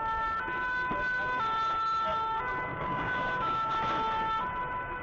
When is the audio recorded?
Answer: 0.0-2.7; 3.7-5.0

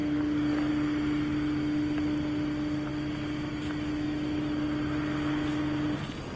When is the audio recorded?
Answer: 0.7-6.4

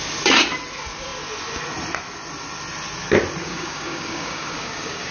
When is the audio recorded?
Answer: 0.0-3.4

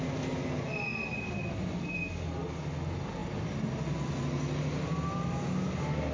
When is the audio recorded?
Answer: 0.0-6.1